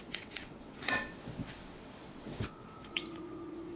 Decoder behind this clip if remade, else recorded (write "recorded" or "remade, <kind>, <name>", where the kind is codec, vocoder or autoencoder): remade, vocoder, WaveNeXt